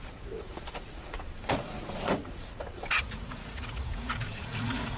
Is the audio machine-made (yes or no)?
yes